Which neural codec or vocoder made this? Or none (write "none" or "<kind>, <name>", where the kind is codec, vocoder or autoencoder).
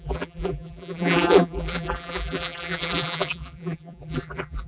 vocoder, BigVGAN v2